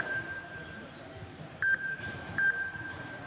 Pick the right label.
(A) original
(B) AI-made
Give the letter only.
B